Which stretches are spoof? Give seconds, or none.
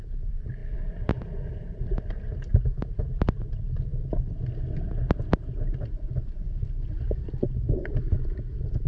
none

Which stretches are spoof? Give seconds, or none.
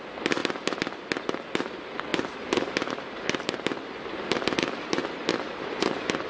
0.0-0.4 (vocoder, BigVGAN v2); 1.2-2.1; 2.9-6.3